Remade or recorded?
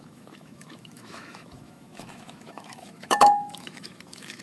remade